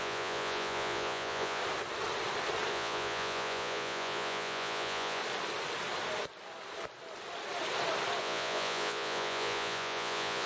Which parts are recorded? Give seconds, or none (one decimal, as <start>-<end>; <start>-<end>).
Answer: 1.6-2.7; 5.2-8.2